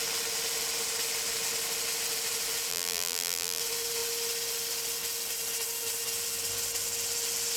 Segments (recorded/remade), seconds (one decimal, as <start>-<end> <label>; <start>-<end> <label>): 0.0-2.7 recorded; 2.7-3.6 remade; 3.6-7.6 recorded